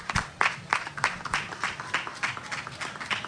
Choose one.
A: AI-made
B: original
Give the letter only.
B